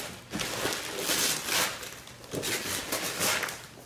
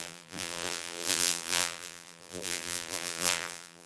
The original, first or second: first